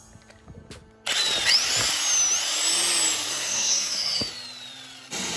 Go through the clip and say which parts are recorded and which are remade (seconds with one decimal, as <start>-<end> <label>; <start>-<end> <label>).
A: 0.0-3.3 recorded; 3.3-4.2 remade; 4.2-5.4 recorded